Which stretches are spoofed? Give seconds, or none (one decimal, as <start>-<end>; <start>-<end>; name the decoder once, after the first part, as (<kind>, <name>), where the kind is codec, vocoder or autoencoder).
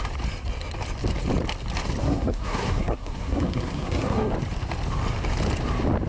2.0-4.3 (codec, SNAC)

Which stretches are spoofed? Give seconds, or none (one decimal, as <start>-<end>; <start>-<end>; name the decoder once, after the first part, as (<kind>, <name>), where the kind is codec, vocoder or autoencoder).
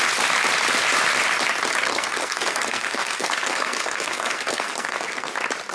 1.9-5.3 (codec, SNAC)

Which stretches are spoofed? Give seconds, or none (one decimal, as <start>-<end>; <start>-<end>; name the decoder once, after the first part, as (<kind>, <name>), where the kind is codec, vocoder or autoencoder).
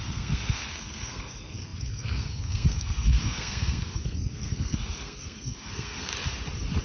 0.0-6.1 (codec, SNAC)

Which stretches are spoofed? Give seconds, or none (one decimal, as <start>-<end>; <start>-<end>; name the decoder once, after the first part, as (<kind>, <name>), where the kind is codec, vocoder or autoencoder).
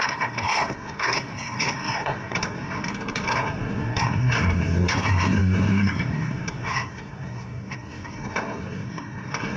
0.0-9.6 (codec, SNAC)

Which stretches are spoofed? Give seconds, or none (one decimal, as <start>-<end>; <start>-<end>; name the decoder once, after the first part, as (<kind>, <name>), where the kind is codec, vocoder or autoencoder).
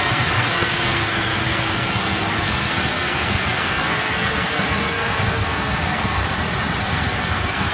0.0-6.2 (codec, SNAC); 6.8-7.7